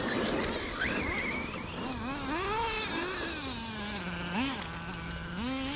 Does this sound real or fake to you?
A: real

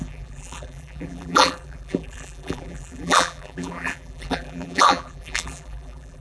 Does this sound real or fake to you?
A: fake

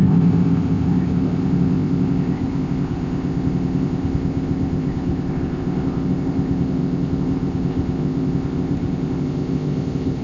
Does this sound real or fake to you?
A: fake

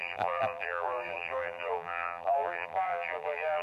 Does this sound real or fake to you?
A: fake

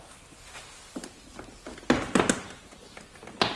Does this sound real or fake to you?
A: real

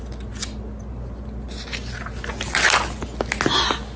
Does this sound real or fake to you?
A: real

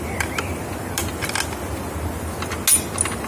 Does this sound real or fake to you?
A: real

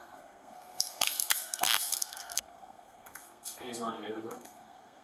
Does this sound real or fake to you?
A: fake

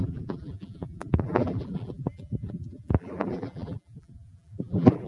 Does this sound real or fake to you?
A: fake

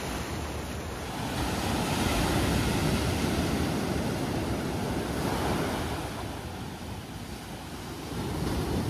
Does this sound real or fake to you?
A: real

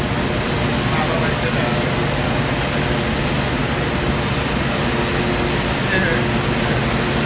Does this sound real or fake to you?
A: real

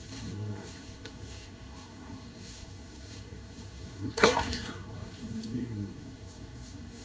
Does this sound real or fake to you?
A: fake